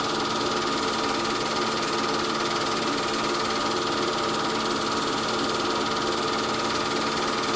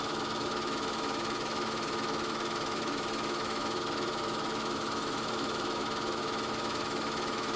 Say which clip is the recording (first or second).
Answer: first